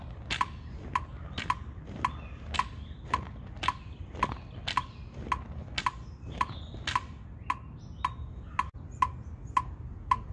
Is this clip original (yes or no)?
yes